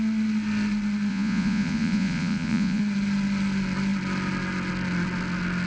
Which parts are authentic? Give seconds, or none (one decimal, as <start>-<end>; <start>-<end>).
0.0-1.1; 2.8-5.7